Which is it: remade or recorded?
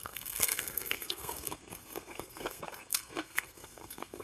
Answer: remade